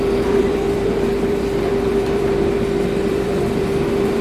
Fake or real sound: fake